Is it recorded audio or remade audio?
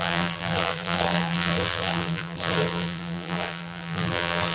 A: remade